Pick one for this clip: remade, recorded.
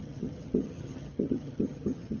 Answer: remade